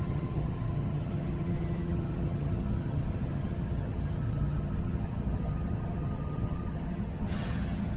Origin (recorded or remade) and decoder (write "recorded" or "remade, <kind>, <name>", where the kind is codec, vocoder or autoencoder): remade, vocoder, HiFi-GAN